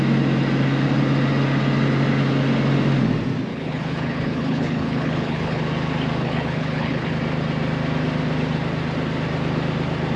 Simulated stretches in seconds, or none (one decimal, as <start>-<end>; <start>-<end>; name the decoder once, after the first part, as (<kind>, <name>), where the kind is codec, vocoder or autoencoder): 3.5-5.6 (codec, HILCodec); 6.2-7.1